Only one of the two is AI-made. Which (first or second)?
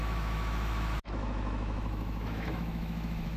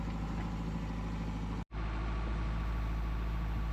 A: first